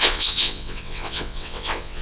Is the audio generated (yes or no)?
yes